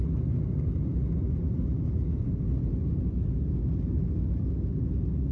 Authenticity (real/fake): real